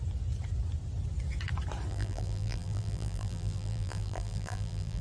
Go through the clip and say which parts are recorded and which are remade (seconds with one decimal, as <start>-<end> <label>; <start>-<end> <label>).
0.0-1.9 recorded; 1.9-5.0 remade